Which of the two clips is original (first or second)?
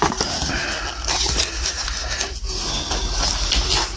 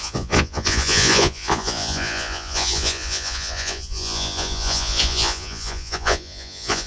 first